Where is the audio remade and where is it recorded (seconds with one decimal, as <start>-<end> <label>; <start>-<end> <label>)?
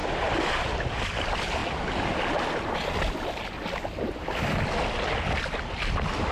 0.0-0.9 recorded; 0.9-1.6 remade; 1.6-5.4 recorded; 5.4-6.3 remade